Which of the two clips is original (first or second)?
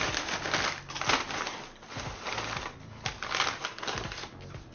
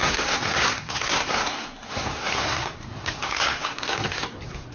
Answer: first